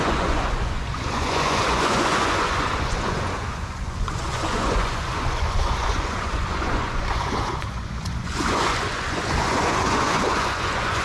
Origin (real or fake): fake